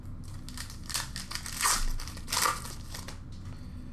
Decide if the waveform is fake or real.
real